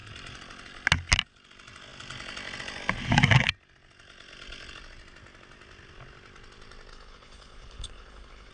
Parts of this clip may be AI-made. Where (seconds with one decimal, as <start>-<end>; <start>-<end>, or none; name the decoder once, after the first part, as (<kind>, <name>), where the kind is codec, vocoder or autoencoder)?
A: 6.9-8.5 (codec, HILCodec)